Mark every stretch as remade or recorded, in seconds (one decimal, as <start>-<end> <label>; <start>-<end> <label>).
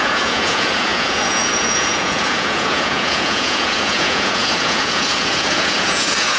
0.0-6.4 remade